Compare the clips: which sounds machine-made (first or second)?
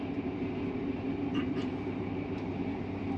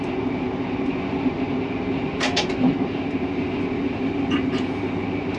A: first